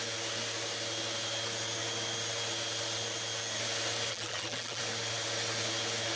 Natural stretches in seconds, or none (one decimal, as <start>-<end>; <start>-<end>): 0.0-4.1; 4.8-6.2